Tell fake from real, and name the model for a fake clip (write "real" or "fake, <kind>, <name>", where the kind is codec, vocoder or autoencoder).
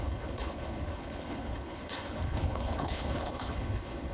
fake, codec, HILCodec